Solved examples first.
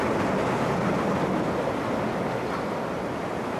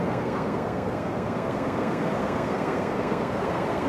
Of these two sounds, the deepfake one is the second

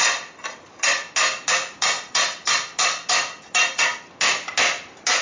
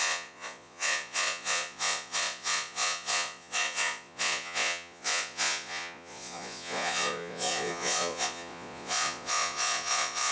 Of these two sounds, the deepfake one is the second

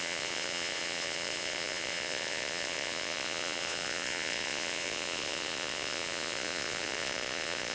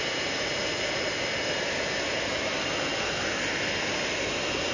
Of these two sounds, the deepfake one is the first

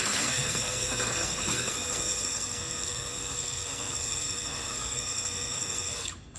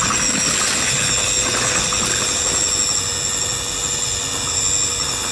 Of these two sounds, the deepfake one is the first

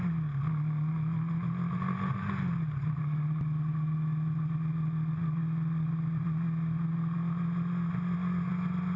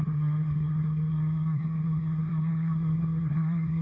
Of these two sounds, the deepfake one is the second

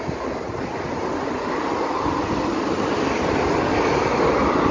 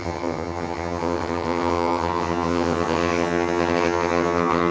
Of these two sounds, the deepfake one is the second